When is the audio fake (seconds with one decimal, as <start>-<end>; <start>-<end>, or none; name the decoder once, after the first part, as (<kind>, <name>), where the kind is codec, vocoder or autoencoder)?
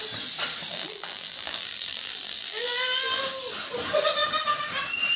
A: 0.7-3.2 (vocoder, BigVGAN v2)